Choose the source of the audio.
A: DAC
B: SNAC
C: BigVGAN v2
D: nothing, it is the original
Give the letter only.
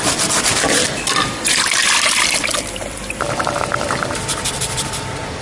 C